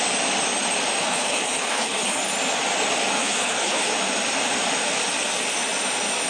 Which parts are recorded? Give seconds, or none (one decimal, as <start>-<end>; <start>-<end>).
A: 0.0-1.0; 2.2-3.2; 3.9-6.3